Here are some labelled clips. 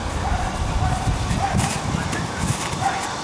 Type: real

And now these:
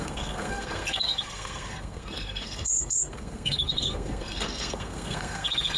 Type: fake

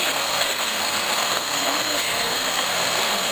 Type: fake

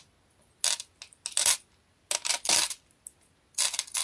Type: real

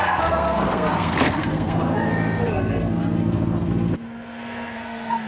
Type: fake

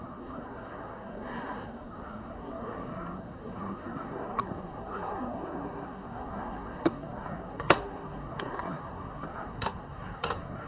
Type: fake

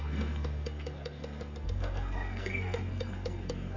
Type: fake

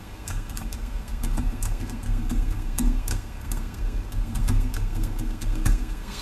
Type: fake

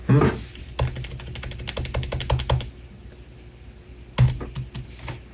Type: real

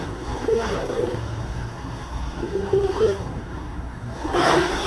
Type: fake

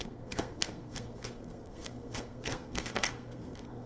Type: fake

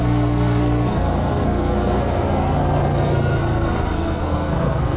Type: fake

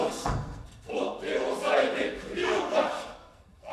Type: fake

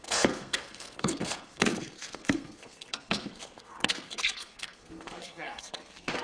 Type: fake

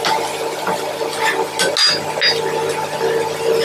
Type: real